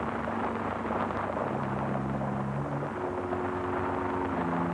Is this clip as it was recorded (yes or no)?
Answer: yes